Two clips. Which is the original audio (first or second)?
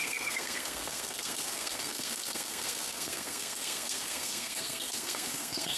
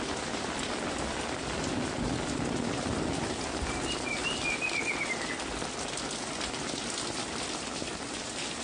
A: second